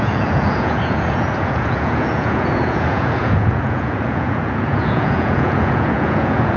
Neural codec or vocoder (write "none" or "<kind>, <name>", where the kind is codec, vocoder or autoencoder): vocoder, Vocos